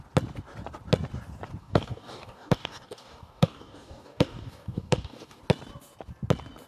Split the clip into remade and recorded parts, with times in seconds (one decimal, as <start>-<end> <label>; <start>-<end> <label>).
0.0-1.6 recorded; 1.6-5.4 remade; 5.4-6.7 recorded